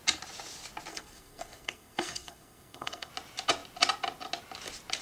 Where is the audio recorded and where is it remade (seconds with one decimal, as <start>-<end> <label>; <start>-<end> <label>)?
0.0-0.9 recorded; 0.9-3.1 remade; 3.1-5.0 recorded

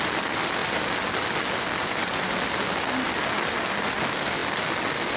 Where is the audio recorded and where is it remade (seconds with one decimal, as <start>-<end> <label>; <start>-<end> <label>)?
0.0-5.2 recorded